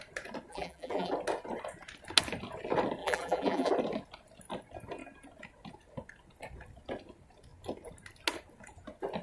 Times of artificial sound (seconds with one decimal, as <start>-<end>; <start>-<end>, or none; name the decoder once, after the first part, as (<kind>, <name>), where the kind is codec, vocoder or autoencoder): 0.5-1.1 (vocoder, BigVGAN v2); 3.0-3.7